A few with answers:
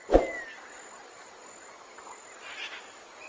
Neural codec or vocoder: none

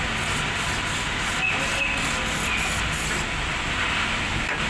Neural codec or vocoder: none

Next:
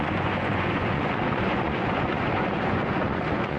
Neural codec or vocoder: vocoder, Vocos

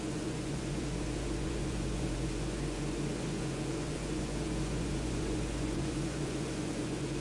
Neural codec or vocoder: vocoder, Vocos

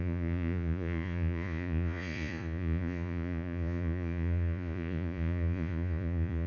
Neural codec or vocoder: vocoder, Vocos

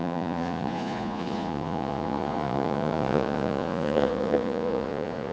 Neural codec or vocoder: vocoder, Vocos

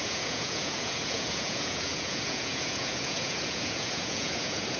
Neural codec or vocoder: vocoder, Vocos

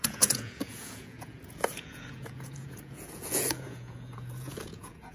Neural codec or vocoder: vocoder, Vocos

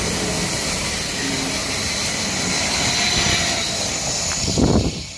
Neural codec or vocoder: none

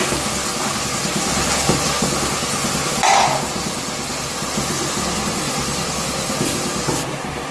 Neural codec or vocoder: none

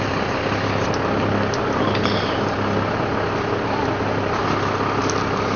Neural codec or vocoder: none